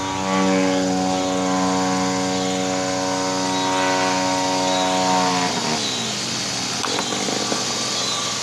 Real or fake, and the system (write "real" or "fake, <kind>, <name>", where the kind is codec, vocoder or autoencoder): real